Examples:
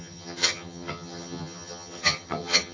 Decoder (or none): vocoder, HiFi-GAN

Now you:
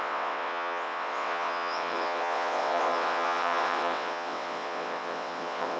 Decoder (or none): vocoder, WaveNeXt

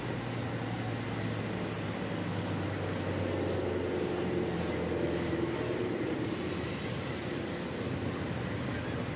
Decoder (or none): none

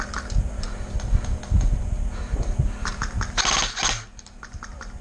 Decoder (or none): none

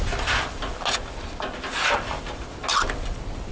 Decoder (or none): none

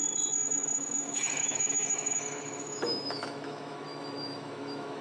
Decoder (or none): autoencoder, DAC-VAE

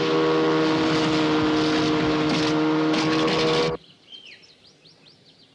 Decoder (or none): none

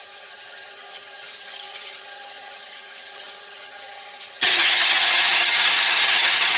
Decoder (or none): vocoder, HiFi-GAN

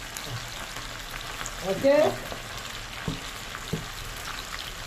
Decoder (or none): none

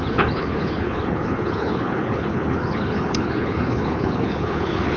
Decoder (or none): codec, HILCodec